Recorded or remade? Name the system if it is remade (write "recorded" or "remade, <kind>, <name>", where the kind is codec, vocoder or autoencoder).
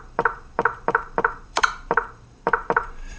remade, vocoder, BigVGAN v2